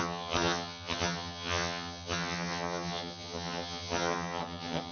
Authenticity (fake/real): fake